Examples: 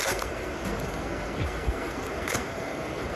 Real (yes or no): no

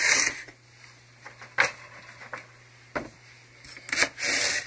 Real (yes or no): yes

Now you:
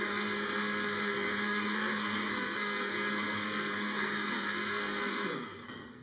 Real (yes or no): no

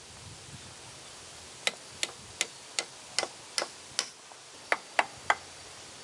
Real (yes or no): yes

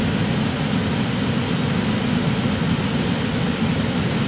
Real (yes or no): yes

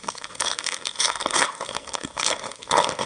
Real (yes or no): no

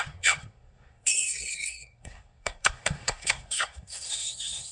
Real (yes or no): no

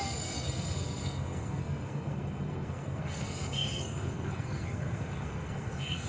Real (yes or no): no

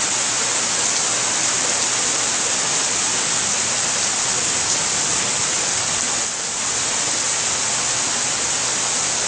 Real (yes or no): yes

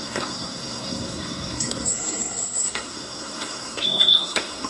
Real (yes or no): no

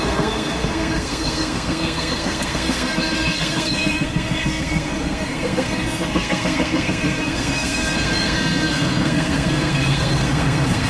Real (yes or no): no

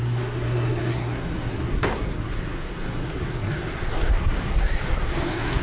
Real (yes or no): no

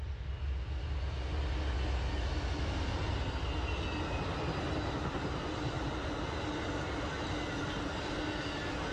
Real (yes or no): yes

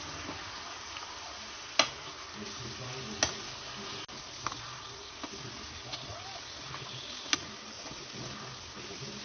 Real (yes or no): yes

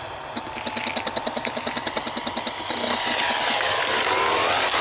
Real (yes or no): yes